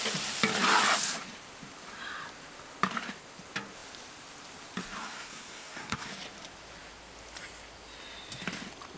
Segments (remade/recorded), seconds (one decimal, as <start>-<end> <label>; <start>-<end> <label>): 0.0-5.0 recorded; 5.0-6.1 remade; 6.1-9.0 recorded